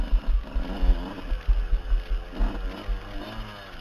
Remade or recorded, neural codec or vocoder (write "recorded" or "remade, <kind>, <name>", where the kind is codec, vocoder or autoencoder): recorded